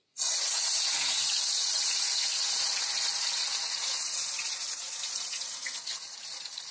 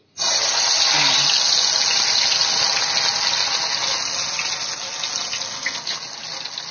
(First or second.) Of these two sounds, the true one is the second